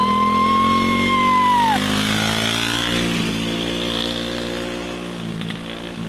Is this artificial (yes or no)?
no